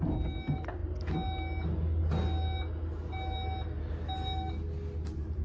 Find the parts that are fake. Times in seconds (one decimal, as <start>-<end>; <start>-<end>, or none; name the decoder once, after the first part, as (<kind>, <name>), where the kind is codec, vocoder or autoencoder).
none